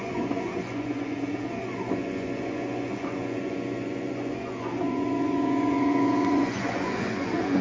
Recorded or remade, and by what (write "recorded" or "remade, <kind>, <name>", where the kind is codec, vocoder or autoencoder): remade, vocoder, Vocos